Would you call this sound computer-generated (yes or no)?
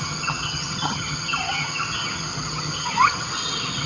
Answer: yes